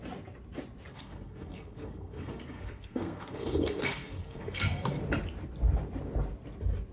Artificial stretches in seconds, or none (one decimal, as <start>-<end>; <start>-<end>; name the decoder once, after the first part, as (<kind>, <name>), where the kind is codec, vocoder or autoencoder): 0.9-5.0 (codec, SNAC)

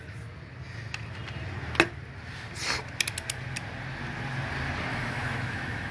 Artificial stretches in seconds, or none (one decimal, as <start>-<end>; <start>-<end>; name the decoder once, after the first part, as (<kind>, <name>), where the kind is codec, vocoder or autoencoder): 4.9-5.9 (autoencoder, DAC-VAE)